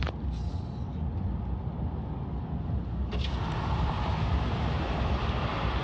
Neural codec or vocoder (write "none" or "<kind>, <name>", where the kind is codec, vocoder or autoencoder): none